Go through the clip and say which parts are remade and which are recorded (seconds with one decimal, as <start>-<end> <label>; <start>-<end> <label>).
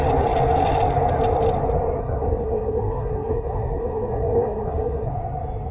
0.0-2.0 recorded; 2.0-5.1 remade; 5.1-5.7 recorded